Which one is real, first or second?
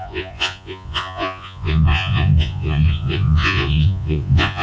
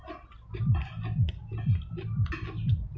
second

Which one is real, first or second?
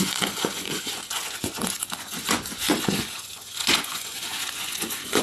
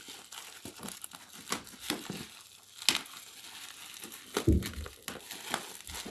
second